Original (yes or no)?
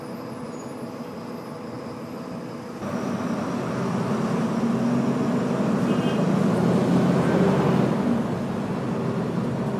yes